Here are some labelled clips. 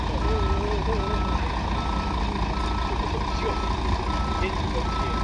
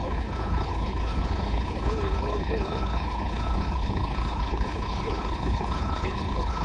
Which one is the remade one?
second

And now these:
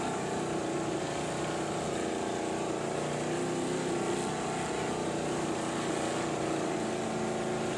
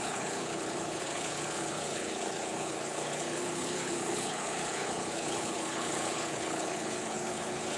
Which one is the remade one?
second